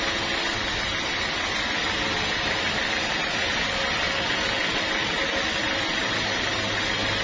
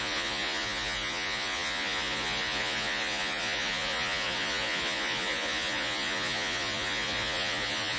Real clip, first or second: first